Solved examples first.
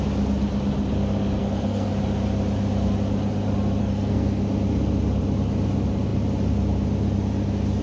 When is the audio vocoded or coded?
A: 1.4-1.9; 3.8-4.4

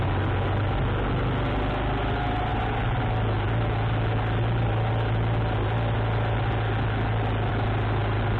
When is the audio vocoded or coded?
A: none

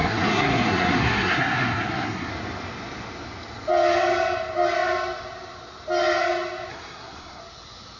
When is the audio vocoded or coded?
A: 0.0-2.3; 6.7-7.4

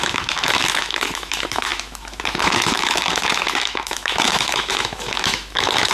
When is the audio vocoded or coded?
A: 0.0-5.9

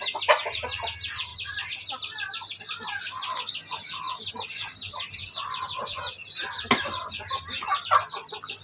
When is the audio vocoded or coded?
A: none

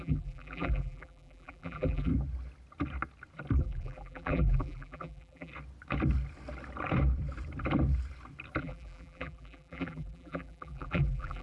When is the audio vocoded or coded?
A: 0.0-2.1; 3.6-5.5; 8.6-11.4